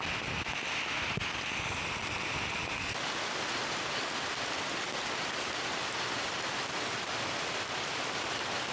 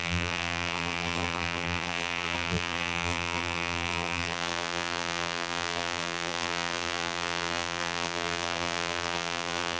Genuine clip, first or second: first